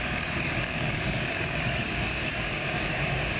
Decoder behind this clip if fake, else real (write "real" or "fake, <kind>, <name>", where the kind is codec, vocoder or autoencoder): fake, codec, DAC